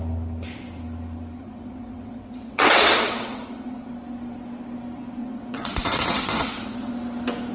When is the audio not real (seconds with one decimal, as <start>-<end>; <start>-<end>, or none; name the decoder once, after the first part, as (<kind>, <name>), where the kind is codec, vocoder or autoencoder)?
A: 1.4-3.9 (vocoder, WaveNeXt); 5.2-6.9